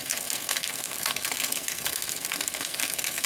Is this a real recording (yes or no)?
no